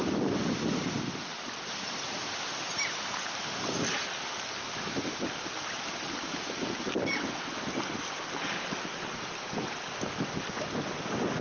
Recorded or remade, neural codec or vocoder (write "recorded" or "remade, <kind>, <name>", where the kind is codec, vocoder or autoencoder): recorded